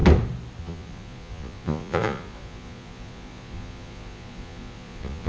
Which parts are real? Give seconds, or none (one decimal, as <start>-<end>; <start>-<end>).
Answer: 0.0-0.6